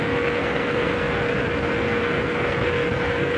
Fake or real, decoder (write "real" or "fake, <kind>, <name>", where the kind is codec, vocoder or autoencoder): fake, codec, SNAC